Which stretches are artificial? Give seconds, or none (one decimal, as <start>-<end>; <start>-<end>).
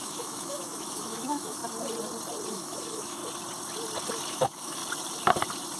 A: 0.0-1.6; 2.5-3.2; 4.3-4.8